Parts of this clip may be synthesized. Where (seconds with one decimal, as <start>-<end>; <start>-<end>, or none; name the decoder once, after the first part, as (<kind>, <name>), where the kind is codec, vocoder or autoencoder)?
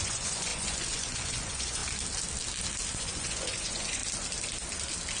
0.0-1.8 (vocoder, Vocos); 2.9-4.0